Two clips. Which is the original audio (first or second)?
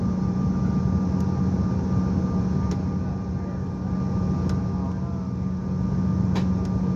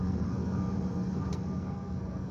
first